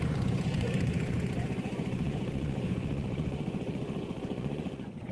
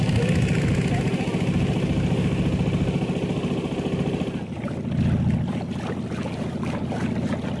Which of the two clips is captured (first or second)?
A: second